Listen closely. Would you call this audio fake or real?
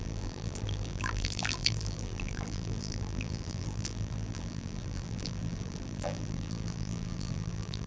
fake